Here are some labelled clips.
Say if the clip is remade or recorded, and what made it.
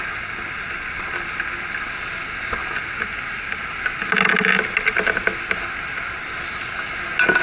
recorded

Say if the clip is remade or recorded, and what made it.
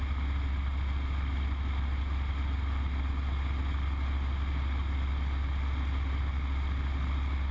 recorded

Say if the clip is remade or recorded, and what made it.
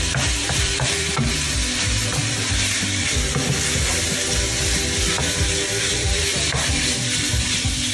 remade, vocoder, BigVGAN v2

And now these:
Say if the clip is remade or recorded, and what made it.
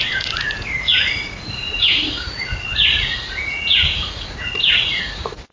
remade, vocoder, Vocos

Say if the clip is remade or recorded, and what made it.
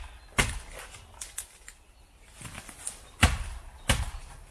recorded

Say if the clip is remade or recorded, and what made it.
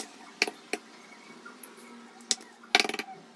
recorded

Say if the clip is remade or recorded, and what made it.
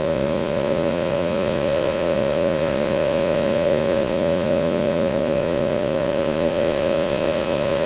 remade, vocoder, Vocos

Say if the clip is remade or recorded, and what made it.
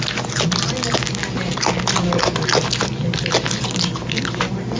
recorded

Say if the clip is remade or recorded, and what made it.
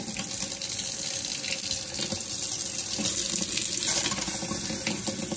recorded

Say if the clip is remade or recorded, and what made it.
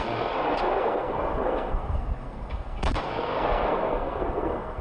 remade, codec, SNAC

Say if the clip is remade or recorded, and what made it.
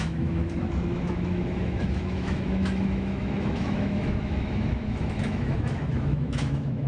remade, autoencoder, DAC-VAE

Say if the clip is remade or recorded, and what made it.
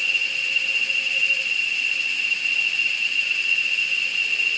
recorded